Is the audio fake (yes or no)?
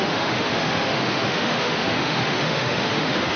yes